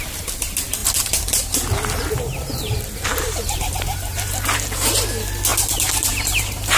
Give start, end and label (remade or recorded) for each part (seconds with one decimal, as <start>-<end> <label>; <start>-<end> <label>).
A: 0.0-0.8 recorded; 0.8-4.9 remade; 4.9-5.5 recorded; 5.5-6.8 remade